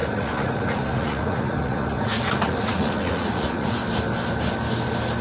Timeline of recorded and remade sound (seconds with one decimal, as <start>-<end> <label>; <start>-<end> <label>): 0.0-3.8 remade; 3.8-5.2 recorded